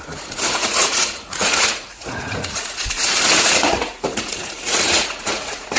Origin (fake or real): fake